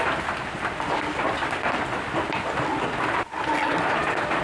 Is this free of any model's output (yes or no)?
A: yes